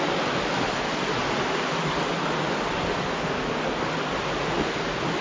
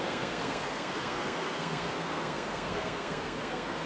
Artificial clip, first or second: second